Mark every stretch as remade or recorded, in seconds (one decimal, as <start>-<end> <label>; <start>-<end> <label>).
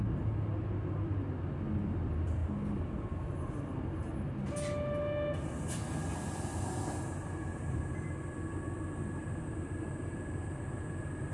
0.0-11.3 recorded